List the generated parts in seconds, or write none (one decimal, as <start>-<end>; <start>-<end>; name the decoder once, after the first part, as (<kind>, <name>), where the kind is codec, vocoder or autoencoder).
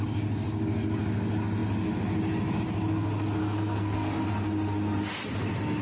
3.4-4.2 (codec, SNAC)